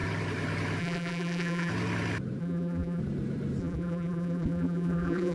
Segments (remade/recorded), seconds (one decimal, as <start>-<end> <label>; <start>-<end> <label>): 0.0-0.8 recorded; 0.8-1.7 remade; 1.7-2.4 recorded; 2.4-3.0 remade; 3.0-3.6 recorded; 3.6-5.3 remade